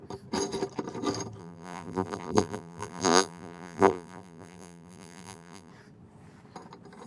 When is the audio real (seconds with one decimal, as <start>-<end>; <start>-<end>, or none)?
0.0-1.4; 5.7-7.1